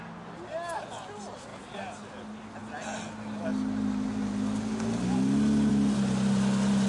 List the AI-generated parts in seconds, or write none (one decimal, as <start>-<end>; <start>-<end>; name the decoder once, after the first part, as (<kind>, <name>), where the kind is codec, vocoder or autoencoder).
1.5-2.1 (vocoder, BigVGAN v2)

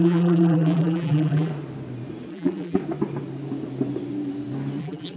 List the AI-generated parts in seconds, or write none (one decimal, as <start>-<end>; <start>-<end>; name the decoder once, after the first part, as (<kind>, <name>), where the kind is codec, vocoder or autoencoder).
0.0-1.5 (vocoder, BigVGAN v2); 2.3-2.8; 4.8-5.2

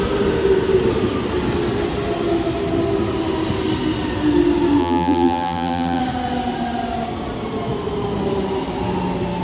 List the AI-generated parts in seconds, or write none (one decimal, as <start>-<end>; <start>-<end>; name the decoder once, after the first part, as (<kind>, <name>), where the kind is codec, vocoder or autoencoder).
4.8-6.0 (vocoder, BigVGAN v2)

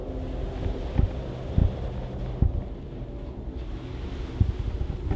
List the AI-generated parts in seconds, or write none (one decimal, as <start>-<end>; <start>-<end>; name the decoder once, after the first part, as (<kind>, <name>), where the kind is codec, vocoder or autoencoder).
none

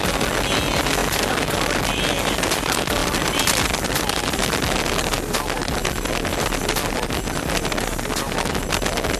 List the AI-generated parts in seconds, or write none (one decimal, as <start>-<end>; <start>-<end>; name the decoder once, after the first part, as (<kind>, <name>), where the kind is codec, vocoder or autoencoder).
3.0-4.3 (vocoder, BigVGAN v2); 5.8-7.1

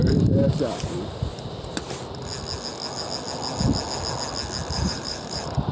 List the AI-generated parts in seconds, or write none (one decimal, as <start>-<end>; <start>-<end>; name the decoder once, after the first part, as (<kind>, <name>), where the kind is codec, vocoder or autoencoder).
0.0-1.3 (vocoder, BigVGAN v2); 4.7-5.7

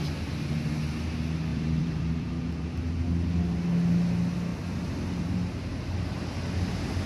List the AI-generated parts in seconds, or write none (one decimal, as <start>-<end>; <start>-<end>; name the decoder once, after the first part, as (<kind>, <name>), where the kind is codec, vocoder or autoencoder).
1.5-2.3 (vocoder, BigVGAN v2); 4.5-5.8